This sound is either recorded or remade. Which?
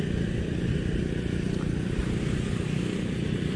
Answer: recorded